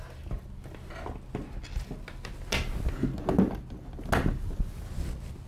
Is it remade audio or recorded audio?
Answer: recorded